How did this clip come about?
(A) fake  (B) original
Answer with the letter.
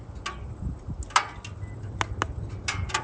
B